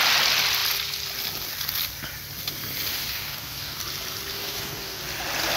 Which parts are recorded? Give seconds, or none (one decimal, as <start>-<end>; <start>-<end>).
0.0-2.9; 3.8-4.3; 5.0-5.6